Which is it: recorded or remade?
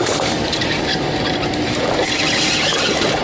remade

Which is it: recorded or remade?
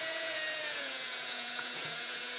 remade